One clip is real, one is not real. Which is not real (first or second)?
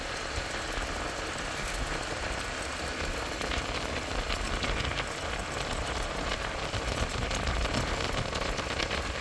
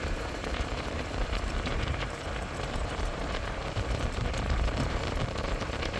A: second